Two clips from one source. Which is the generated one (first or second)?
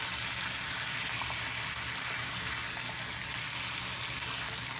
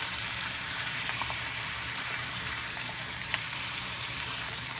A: second